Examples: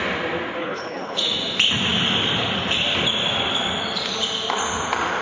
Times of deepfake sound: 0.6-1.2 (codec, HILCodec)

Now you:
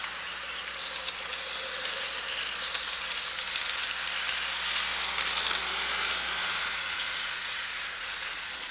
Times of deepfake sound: 6.4-8.7 (vocoder, Vocos)

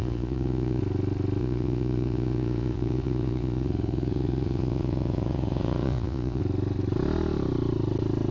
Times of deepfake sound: 0.0-0.8 (vocoder, Vocos); 1.4-6.4

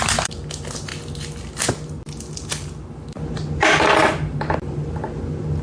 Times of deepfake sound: none

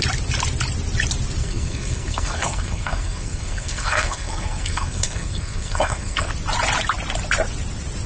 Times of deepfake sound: 1.4-6.3 (codec, SNAC)